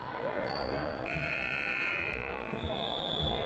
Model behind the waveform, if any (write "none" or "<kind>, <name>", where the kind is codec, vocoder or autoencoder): vocoder, Vocos